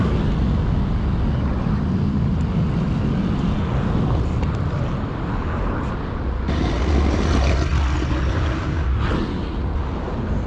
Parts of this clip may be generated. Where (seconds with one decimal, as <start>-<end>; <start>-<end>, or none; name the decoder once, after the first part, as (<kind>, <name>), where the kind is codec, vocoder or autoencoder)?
none